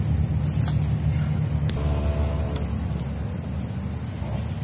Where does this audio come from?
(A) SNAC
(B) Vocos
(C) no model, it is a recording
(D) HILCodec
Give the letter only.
C